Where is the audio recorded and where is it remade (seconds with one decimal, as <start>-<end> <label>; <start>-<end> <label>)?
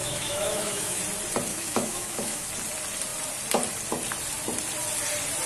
0.0-1.0 remade; 1.0-1.5 recorded; 1.5-2.5 remade; 2.5-5.5 recorded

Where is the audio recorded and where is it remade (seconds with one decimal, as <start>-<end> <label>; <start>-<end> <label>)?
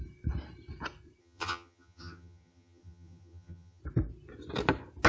0.0-1.2 recorded; 1.2-3.8 remade; 3.8-5.1 recorded